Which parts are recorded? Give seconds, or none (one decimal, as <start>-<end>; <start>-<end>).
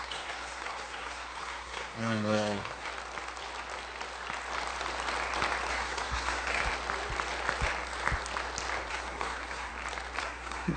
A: 2.9-5.7; 6.6-8.9; 9.7-10.2